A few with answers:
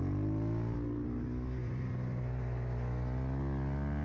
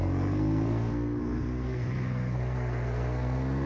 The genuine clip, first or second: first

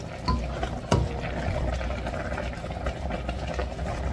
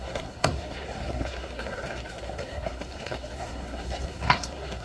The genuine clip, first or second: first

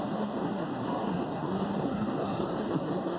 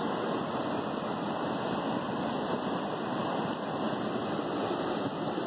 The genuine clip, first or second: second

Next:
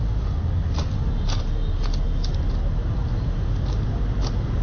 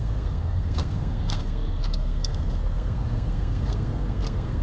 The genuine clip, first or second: first